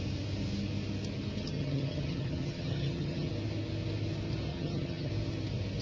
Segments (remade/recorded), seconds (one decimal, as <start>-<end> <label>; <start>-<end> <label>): 0.0-1.4 recorded; 1.4-3.3 remade; 3.3-4.5 recorded; 4.5-5.1 remade; 5.1-5.8 recorded